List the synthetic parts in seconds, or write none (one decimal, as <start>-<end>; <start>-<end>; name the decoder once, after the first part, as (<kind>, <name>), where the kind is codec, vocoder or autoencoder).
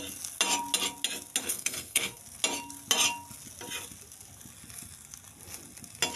1.4-2.2 (codec, SNAC)